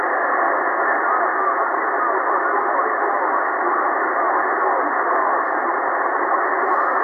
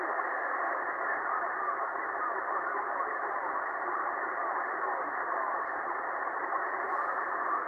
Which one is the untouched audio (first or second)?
first